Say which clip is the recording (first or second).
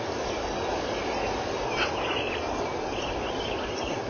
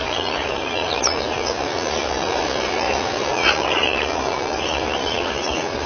first